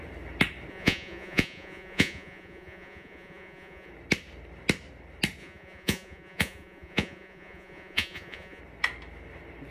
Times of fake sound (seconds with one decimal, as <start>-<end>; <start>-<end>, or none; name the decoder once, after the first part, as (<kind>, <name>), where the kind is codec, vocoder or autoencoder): 0.7-3.9 (vocoder, Vocos); 5.4-8.6